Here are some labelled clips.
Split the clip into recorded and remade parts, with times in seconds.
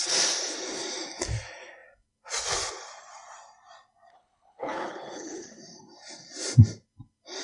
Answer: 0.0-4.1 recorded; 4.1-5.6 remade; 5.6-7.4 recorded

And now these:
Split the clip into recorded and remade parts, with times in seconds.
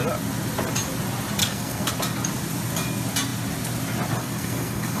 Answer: 0.0-1.4 recorded; 1.4-1.9 remade; 1.9-4.2 recorded; 4.2-5.0 remade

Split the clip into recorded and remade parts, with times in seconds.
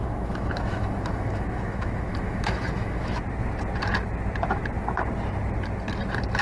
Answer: 0.0-3.2 remade; 3.2-6.4 recorded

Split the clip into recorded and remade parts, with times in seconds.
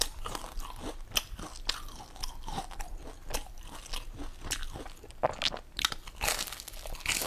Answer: 0.0-7.3 recorded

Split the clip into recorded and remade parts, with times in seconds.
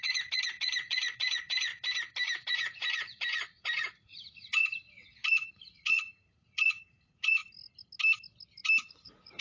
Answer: 0.0-1.7 remade; 1.7-2.4 recorded; 2.4-7.4 remade; 7.4-8.9 recorded; 8.9-9.4 remade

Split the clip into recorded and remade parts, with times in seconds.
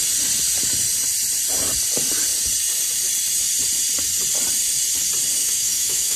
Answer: 0.0-5.4 recorded; 5.4-6.2 remade